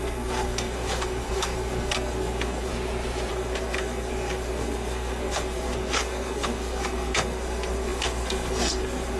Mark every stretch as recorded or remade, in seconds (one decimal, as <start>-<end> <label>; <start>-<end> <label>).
0.0-2.7 remade; 2.7-3.3 recorded; 3.3-9.2 remade